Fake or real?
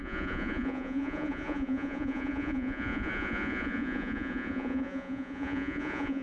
fake